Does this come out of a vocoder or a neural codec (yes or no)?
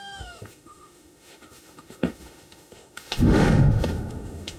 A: yes